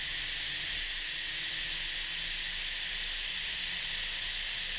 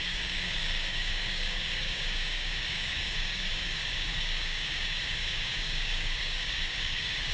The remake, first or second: second